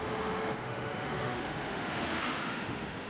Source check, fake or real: fake